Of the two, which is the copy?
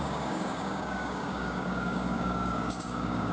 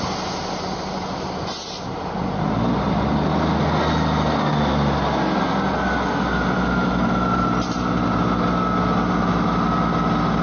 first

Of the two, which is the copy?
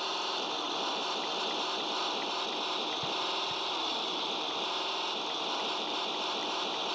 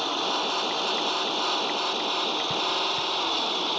first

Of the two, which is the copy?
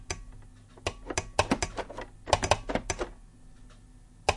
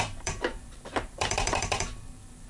second